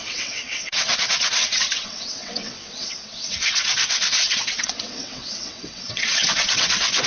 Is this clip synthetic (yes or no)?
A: yes